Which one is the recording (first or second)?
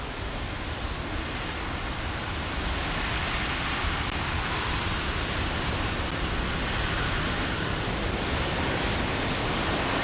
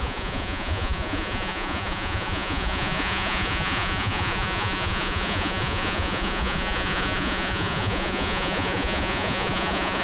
first